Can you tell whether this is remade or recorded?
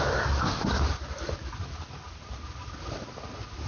recorded